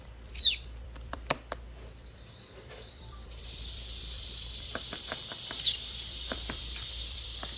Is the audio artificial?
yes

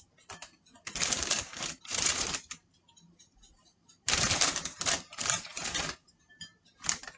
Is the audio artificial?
yes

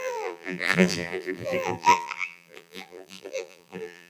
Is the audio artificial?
yes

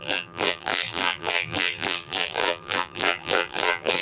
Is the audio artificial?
yes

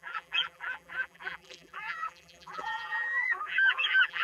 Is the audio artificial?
yes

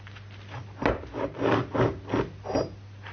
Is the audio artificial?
no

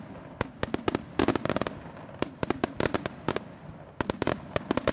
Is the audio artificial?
yes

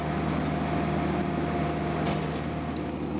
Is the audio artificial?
no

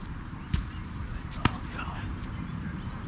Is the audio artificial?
yes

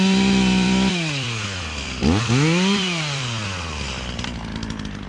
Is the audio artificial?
yes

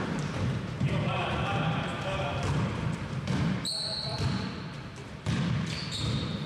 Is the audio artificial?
no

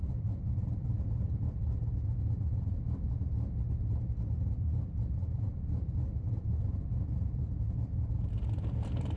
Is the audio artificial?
yes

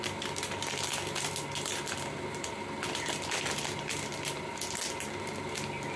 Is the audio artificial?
yes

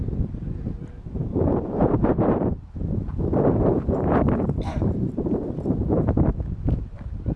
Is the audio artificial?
yes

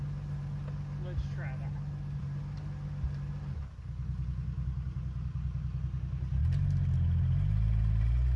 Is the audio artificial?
no